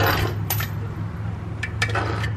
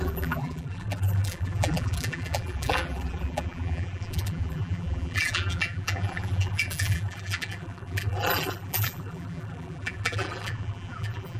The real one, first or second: first